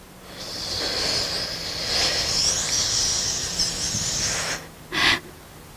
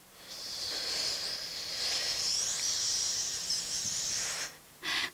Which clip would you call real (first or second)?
first